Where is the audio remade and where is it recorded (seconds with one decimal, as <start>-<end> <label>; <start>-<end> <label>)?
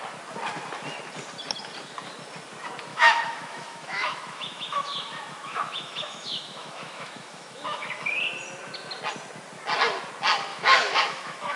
0.0-2.9 recorded; 2.9-8.2 remade; 8.2-10.5 recorded; 10.5-11.6 remade